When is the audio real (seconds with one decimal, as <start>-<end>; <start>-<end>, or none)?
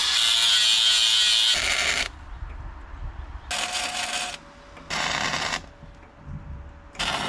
0.0-7.3